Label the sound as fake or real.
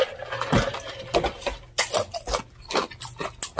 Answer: real